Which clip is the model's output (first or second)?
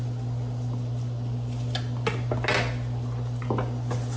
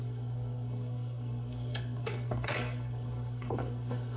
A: second